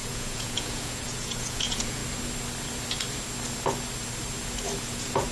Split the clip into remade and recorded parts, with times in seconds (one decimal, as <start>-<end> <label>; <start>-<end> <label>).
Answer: 0.0-2.0 remade; 2.0-4.8 recorded; 4.8-5.3 remade